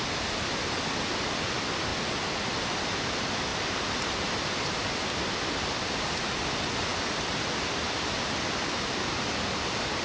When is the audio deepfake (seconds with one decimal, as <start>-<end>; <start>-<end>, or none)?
none